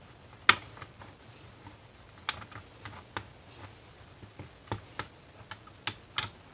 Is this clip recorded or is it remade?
recorded